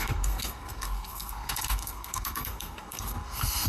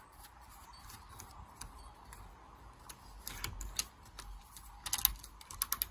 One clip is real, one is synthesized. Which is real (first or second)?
second